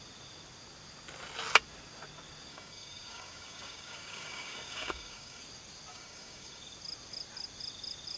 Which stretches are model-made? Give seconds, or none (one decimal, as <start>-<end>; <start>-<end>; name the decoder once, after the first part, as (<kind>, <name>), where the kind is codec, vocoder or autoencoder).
2.5-5.4 (codec, DAC); 5.9-6.6

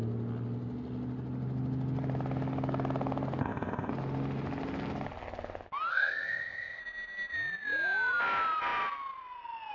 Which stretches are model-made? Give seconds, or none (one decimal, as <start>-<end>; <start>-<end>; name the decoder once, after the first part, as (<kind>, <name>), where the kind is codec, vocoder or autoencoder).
3.4-3.9 (codec, ZipCodec); 5.9-6.8

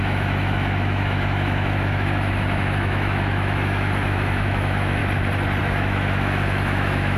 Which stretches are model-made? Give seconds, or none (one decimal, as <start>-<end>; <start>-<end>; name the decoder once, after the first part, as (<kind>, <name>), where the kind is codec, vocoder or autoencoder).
0.0-5.0 (autoencoder, DAC-VAE); 5.6-7.2

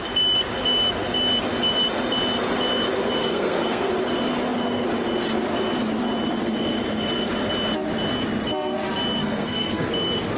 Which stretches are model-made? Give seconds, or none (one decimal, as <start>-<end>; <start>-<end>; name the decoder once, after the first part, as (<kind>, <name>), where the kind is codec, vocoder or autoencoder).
3.2-3.9 (codec, SNAC); 9.2-9.9

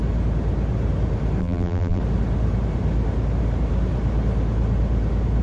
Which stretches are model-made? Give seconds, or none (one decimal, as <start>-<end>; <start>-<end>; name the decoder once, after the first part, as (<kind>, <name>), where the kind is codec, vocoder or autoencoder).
1.4-2.0 (vocoder, BigVGAN v2)

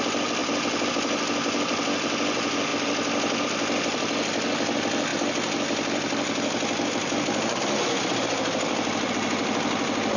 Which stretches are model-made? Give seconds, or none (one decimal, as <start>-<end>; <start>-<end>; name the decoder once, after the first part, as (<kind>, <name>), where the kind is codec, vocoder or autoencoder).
none